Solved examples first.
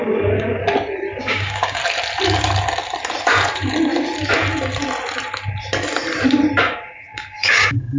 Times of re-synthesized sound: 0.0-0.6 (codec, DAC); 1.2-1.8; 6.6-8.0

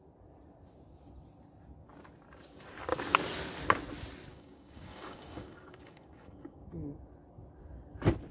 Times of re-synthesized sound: 4.3-6.6 (codec, DAC)